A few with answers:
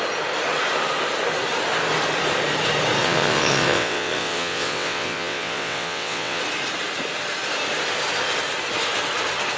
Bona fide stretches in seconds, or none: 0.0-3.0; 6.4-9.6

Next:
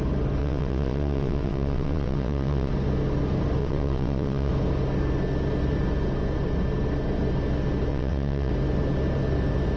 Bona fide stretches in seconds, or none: 0.0-0.4; 2.7-3.6; 4.5-7.9; 8.5-9.8